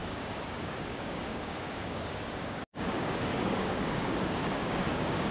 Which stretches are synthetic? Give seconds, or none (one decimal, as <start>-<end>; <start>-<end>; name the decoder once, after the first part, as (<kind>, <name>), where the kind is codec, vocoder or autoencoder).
0.0-5.3 (codec, DAC)

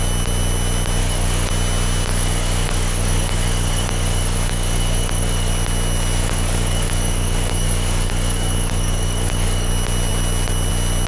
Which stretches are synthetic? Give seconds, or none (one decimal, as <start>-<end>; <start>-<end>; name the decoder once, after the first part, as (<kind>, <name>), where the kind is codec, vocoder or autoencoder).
1.0-1.5 (codec, DAC); 2.1-5.5; 6.2-9.7

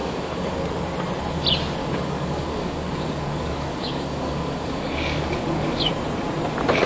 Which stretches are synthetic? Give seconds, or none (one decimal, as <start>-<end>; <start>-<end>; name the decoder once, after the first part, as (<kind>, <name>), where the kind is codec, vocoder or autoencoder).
0.0-0.5 (codec, DAC); 1.8-5.9

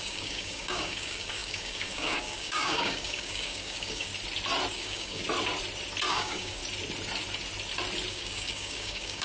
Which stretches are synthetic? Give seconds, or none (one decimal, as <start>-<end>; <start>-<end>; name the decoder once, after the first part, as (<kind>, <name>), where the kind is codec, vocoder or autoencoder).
0.0-4.1 (codec, DAC); 4.7-5.2; 6.1-6.6; 8.1-9.2

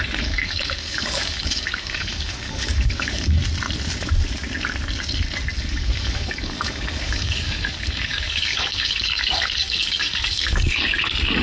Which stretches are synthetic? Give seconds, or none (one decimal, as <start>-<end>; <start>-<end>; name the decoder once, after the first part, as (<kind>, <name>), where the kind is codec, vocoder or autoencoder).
0.0-3.4 (codec, DAC); 5.6-11.4

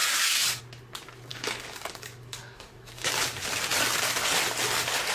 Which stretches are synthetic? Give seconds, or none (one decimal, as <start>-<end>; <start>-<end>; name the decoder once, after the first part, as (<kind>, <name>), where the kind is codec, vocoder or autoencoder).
0.0-0.6 (codec, DAC); 1.3-3.1

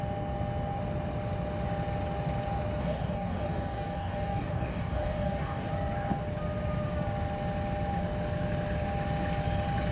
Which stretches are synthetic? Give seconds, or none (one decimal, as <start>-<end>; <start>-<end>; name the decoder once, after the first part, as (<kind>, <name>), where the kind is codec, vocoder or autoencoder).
2.8-5.7 (codec, DAC)